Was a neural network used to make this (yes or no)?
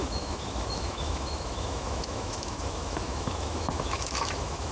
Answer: yes